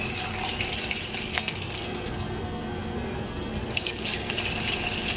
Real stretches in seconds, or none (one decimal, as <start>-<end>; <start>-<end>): 0.0-1.3; 4.4-5.2